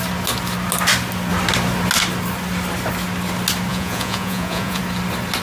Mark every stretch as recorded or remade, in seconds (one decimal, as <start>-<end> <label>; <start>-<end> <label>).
0.0-3.7 recorded; 3.7-4.8 remade; 4.8-5.4 recorded